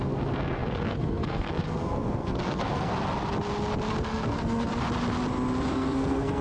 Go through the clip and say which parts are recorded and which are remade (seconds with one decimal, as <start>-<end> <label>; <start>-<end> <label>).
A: 0.0-2.9 remade; 2.9-3.9 recorded; 3.9-4.7 remade; 4.7-5.7 recorded; 5.7-6.4 remade